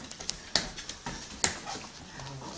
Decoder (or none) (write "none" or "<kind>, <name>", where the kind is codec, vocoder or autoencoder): none